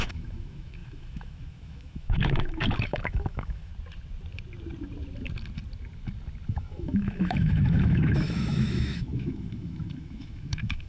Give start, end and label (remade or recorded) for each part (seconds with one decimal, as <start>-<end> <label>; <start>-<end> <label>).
0.0-3.7 remade; 3.7-6.5 recorded; 6.5-10.9 remade